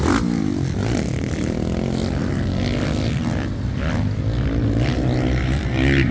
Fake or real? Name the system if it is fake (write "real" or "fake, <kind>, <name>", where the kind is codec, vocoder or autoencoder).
real